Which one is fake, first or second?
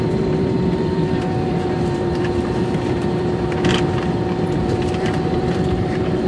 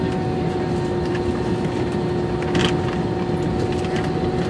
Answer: first